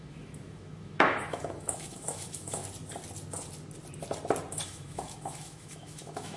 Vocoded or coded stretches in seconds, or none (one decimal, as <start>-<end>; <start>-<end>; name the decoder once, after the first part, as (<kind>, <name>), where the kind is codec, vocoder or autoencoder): 0.0-2.6 (autoencoder, DAC-VAE); 4.5-6.4